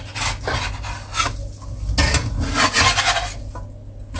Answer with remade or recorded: recorded